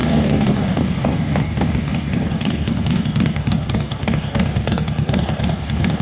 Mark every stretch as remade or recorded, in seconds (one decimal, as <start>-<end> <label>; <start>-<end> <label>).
0.0-6.0 remade